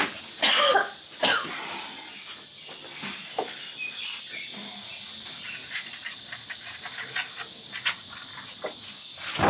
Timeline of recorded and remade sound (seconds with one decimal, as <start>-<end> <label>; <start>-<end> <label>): 0.0-9.5 recorded